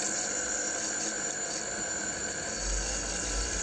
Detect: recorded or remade recorded